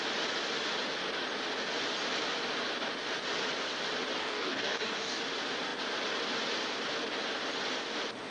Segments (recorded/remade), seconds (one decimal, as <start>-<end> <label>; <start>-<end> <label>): 0.0-4.2 recorded; 4.2-5.2 remade; 5.2-8.3 recorded